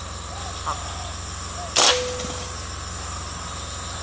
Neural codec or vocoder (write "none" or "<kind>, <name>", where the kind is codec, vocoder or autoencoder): none